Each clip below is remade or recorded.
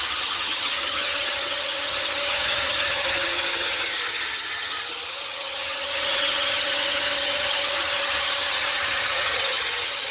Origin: remade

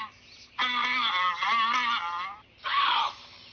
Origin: recorded